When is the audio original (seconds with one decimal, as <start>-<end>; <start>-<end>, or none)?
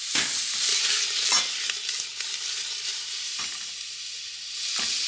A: 0.0-5.1